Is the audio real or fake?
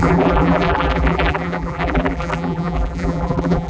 fake